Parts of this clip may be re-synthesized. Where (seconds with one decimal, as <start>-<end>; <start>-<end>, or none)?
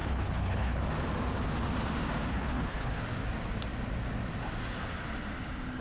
0.0-0.8; 2.3-3.0